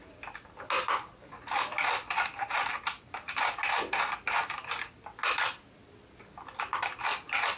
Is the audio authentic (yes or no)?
yes